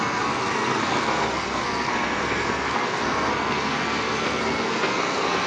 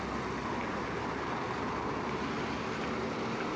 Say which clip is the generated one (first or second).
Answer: first